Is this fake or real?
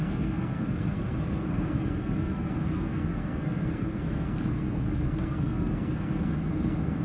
fake